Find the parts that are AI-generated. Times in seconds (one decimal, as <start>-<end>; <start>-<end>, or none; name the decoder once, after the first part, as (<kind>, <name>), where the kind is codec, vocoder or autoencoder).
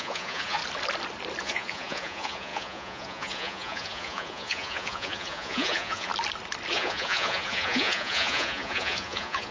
0.0-0.6 (vocoder, Vocos); 1.4-6.1; 6.7-9.5